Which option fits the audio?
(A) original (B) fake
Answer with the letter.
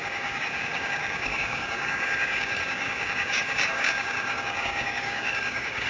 B